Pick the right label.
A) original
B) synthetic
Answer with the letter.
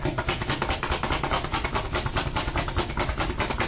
A